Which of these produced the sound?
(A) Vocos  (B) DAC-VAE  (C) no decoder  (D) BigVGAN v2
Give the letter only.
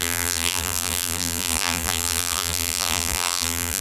D